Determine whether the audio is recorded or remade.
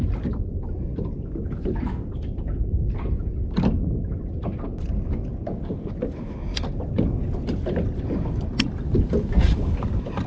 recorded